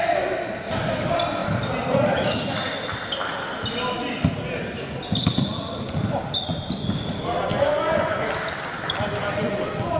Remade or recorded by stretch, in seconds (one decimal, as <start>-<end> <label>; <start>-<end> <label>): 0.0-7.5 recorded; 7.5-8.3 remade; 8.3-10.0 recorded